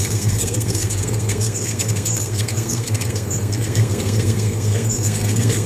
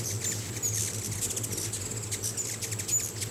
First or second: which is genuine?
second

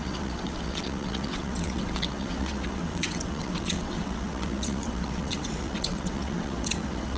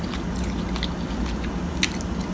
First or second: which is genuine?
second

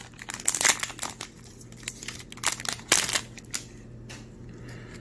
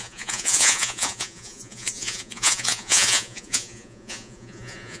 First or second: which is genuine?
first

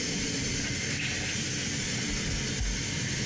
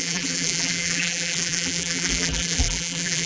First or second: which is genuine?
first